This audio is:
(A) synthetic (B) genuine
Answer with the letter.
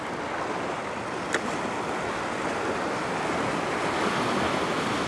B